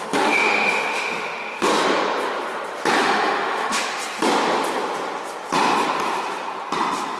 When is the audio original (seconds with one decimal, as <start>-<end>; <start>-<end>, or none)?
1.7-3.0; 3.9-7.2